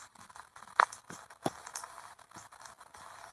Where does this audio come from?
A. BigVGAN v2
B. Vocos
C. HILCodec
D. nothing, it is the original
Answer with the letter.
D